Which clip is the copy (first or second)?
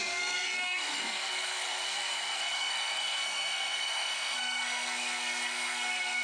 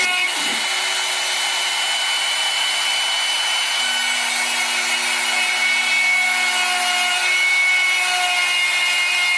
first